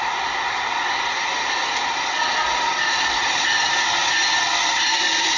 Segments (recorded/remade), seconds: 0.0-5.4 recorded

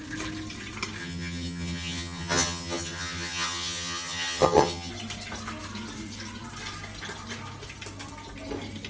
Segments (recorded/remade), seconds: 0.0-1.0 recorded; 1.0-4.9 remade; 4.9-8.9 recorded